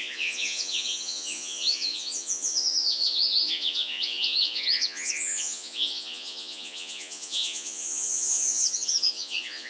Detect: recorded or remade remade